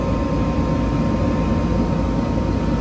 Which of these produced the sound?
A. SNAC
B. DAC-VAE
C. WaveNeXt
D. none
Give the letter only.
D